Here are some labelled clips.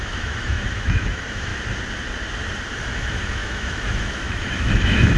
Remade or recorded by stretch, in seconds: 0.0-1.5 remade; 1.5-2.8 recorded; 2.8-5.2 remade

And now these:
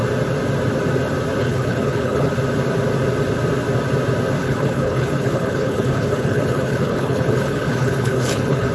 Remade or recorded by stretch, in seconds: 0.0-1.4 recorded; 1.4-2.3 remade; 2.3-4.4 recorded; 4.4-8.7 remade